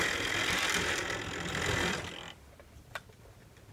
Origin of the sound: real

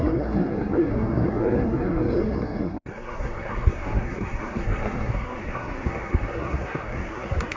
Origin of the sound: fake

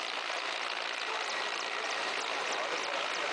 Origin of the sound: real